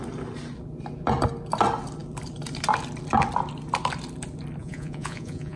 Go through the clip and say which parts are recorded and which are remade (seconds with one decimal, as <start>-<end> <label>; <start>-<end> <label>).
0.0-4.6 recorded; 4.6-5.6 remade

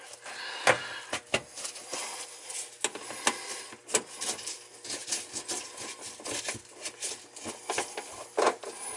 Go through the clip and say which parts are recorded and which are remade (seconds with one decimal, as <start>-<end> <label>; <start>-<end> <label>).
0.0-9.0 recorded

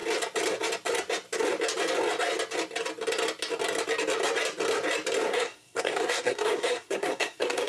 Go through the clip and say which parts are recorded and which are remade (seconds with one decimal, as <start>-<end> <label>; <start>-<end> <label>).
0.0-5.3 recorded; 5.3-7.7 remade

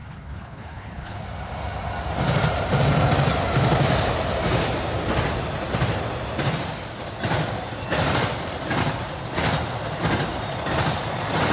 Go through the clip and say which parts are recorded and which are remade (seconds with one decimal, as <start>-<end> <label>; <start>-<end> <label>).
0.0-1.2 remade; 1.2-11.5 recorded

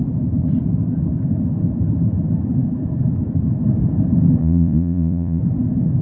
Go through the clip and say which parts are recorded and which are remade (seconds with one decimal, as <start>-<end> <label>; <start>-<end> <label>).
0.0-4.4 recorded; 4.4-5.4 remade; 5.4-6.0 recorded

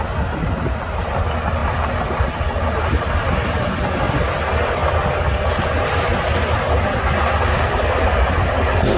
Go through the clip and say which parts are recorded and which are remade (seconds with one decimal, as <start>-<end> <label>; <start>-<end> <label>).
0.0-9.0 recorded

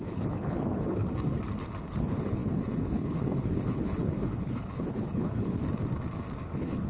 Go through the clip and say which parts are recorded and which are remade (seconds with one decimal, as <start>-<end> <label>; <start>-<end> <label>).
0.0-1.0 remade; 1.0-1.9 recorded; 1.9-5.6 remade; 5.6-6.4 recorded; 6.4-6.9 remade

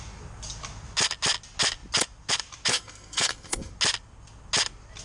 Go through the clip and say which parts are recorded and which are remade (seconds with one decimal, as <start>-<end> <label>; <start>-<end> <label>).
0.0-2.7 recorded; 2.7-3.7 remade; 3.7-5.0 recorded